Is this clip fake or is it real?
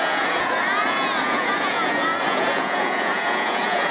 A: fake